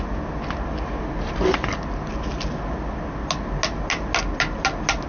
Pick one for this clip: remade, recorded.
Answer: recorded